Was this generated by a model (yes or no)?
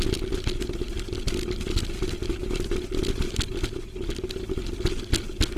no